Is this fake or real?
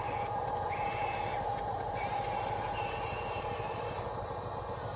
real